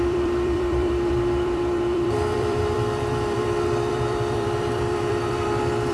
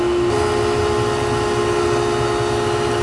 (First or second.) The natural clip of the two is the second